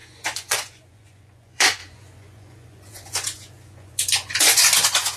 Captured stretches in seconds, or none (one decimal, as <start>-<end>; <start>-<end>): none